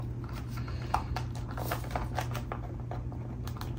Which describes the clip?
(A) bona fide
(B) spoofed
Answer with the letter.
A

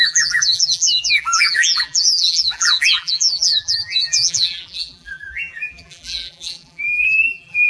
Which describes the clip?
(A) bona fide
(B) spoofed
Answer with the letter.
B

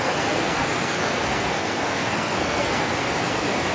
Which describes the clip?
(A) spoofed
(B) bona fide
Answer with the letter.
A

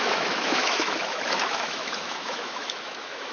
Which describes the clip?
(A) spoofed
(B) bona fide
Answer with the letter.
A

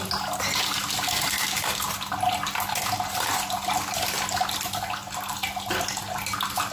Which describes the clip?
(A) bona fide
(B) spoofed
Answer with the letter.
A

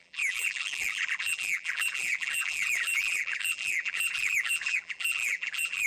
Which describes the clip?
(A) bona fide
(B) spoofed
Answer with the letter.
B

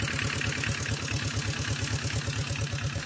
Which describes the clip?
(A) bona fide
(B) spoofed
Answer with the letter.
A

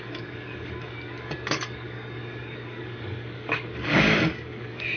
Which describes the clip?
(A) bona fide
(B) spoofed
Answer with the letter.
B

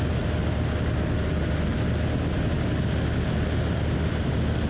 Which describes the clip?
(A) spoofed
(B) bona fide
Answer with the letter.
B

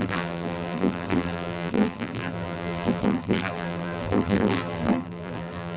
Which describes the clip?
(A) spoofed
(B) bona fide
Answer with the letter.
A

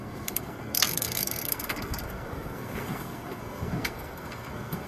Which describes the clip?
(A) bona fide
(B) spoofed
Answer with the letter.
B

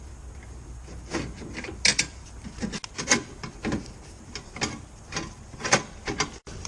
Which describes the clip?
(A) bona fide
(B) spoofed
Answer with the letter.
A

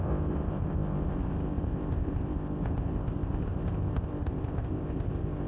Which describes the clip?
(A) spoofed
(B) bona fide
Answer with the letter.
A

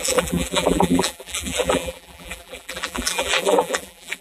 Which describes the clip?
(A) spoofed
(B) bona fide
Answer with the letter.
A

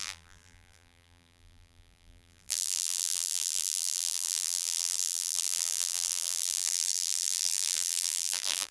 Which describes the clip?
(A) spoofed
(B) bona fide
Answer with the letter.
A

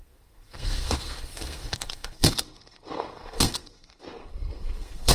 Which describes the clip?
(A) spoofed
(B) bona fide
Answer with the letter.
A